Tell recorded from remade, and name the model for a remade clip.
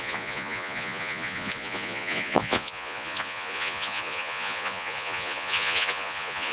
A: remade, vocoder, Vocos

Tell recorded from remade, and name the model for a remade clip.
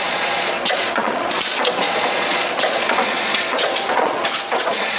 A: remade, vocoder, Vocos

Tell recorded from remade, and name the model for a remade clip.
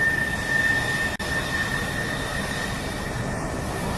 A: recorded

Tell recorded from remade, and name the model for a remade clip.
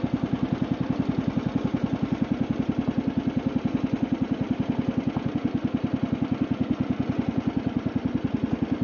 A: recorded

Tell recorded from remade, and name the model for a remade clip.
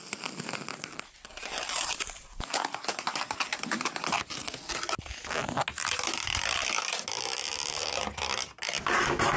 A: recorded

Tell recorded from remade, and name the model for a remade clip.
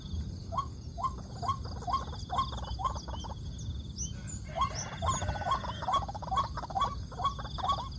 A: recorded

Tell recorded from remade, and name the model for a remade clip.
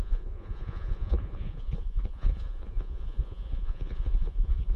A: remade, vocoder, Vocos